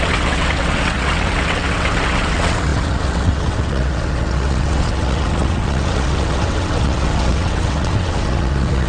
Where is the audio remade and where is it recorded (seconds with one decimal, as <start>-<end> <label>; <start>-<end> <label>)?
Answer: 0.0-8.9 remade